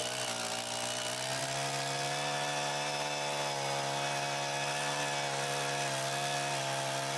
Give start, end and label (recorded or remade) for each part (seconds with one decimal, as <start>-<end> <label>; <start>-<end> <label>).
0.0-7.2 recorded

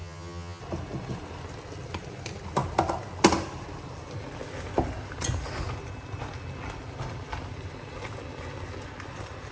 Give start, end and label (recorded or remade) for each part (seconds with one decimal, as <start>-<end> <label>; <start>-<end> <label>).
0.0-0.6 remade; 0.6-9.5 recorded

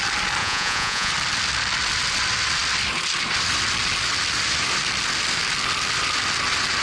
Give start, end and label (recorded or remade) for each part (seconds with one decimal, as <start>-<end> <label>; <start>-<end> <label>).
0.0-0.4 recorded; 0.4-1.1 remade; 1.1-6.8 recorded

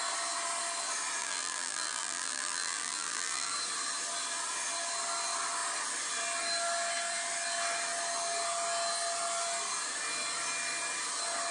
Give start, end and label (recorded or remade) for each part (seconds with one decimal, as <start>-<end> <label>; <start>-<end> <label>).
0.0-1.2 recorded; 1.2-3.5 remade; 3.5-11.5 recorded